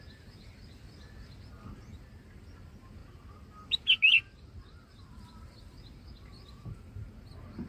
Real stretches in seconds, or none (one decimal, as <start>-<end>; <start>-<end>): 0.0-7.7